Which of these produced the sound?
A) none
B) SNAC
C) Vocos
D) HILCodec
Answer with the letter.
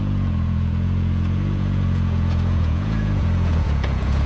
C